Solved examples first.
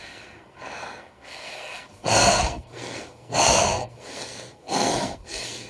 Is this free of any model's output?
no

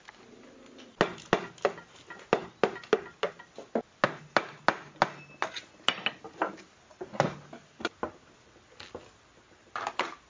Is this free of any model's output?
yes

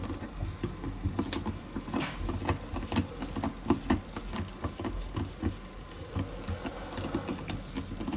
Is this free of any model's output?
yes